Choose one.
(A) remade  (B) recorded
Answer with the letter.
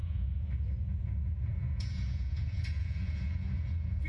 A